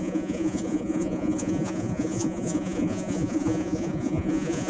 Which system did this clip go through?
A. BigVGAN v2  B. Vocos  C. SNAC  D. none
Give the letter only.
B